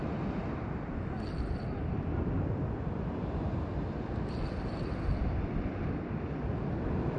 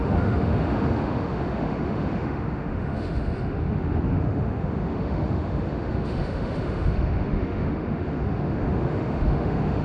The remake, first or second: second